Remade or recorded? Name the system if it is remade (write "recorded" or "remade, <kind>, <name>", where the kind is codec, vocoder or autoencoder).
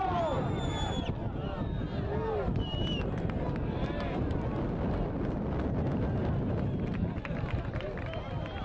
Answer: recorded